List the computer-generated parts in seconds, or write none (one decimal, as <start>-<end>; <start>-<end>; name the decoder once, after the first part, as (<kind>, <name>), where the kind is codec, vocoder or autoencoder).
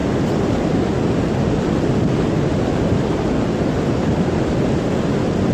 none